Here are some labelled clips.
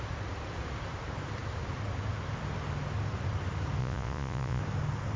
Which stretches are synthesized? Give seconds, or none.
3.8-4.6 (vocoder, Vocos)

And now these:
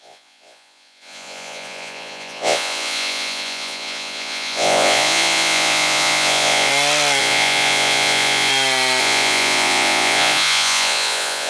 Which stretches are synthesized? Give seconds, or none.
0.0-6.7 (vocoder, Vocos); 7.2-8.5; 9.0-11.5

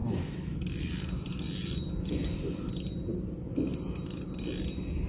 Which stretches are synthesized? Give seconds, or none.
none

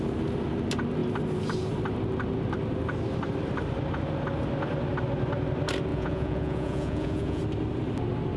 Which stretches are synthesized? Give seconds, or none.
5.9-7.4 (vocoder, Vocos)